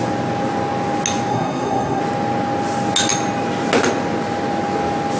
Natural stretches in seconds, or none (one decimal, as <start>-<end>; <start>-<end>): 0.0-1.3; 2.0-5.2